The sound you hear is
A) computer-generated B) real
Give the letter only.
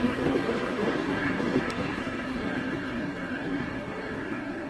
A